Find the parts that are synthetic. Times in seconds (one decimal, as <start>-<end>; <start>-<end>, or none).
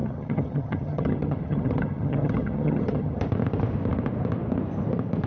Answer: 0.0-3.2